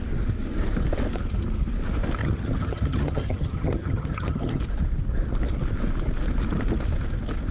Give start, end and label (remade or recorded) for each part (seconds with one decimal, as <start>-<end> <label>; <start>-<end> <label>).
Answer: 0.0-2.2 recorded; 2.2-4.6 remade; 4.6-7.5 recorded